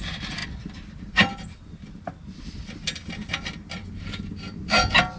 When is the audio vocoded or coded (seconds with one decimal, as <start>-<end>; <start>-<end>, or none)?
none